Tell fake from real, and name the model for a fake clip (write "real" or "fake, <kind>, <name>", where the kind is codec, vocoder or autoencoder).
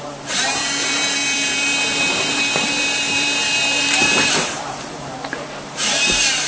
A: fake, vocoder, BigVGAN v2